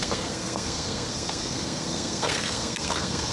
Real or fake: fake